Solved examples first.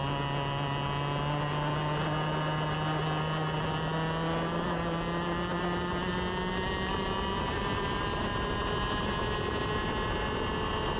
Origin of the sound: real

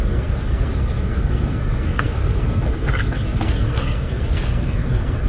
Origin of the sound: fake